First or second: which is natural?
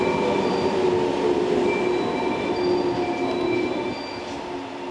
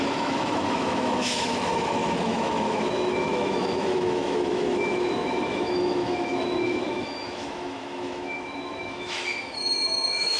first